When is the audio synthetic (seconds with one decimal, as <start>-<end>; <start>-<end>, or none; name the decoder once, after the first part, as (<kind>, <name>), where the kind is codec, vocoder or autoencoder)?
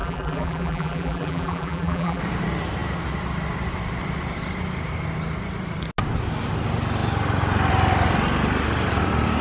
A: 0.0-2.2 (vocoder, BigVGAN v2)